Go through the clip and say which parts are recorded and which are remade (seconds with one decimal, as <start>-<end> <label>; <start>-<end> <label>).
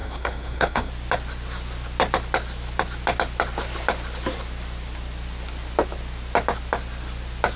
0.0-0.9 remade; 0.9-7.6 recorded